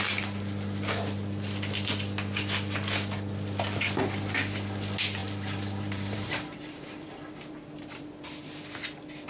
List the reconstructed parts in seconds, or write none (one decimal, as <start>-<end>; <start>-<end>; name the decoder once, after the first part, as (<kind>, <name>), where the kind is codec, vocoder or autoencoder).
5.2-8.1 (vocoder, BigVGAN v2)